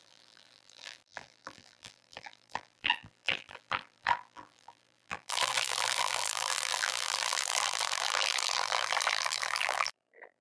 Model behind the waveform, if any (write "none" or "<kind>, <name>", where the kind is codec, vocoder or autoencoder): vocoder, BigVGAN v2